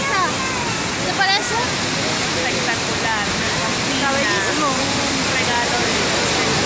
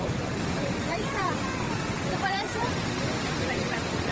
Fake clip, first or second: second